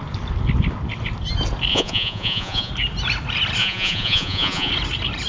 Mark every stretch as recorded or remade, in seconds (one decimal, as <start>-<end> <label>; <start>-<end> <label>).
0.0-1.7 recorded; 1.7-2.7 remade; 2.7-3.6 recorded; 3.6-4.7 remade; 4.7-5.3 recorded